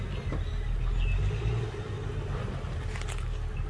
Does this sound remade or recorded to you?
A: recorded